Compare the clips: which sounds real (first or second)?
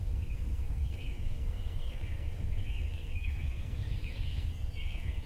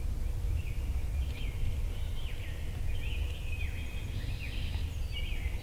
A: second